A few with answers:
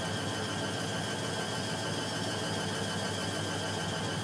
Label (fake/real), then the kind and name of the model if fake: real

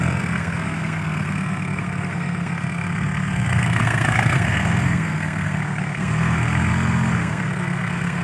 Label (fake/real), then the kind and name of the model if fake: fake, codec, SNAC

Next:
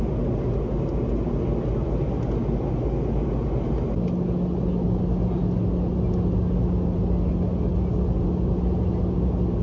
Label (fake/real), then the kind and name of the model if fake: real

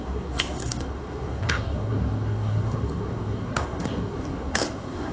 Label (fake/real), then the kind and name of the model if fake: fake, codec, SNAC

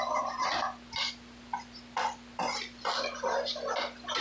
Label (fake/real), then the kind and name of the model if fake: real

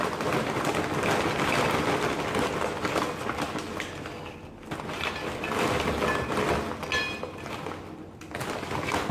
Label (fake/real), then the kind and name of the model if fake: real